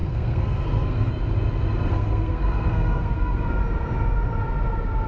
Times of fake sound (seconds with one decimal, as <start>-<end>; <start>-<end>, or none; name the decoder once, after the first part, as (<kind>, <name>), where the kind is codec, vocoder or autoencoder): 0.0-1.1 (codec, SNAC); 1.9-3.6